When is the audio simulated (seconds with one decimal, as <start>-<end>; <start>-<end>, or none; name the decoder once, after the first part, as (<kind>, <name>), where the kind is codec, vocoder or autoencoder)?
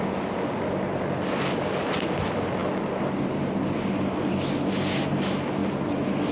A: none